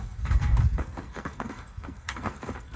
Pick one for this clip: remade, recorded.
remade